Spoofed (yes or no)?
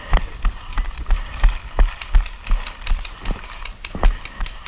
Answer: no